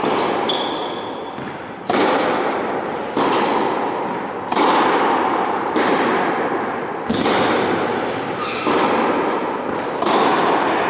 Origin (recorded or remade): remade